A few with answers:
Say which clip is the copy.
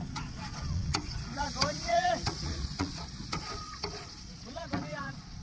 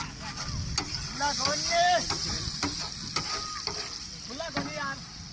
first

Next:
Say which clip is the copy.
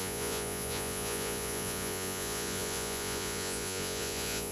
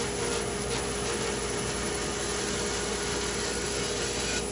first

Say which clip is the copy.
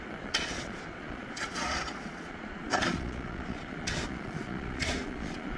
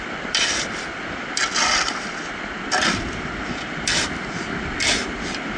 first